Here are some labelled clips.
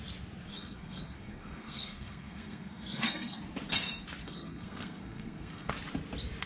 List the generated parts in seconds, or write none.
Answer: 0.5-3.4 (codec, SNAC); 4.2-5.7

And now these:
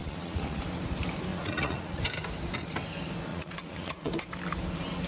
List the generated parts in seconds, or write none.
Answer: 0.0-0.6 (vocoder, Vocos); 1.3-2.0; 3.3-4.1